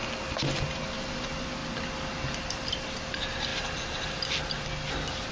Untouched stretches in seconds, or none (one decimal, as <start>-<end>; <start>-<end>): 0.0-5.3